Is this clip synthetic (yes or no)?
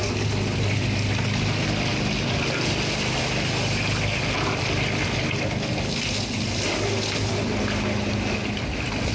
no